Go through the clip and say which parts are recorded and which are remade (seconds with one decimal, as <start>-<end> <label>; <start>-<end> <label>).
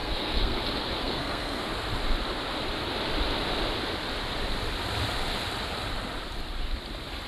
0.0-0.6 remade; 0.6-1.0 recorded; 1.0-1.6 remade; 1.6-7.3 recorded